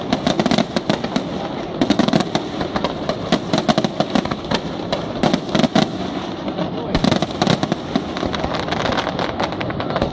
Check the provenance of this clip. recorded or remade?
recorded